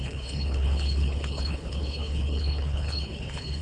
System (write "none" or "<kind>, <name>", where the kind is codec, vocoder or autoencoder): codec, HILCodec